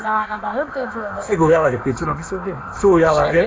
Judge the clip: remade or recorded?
remade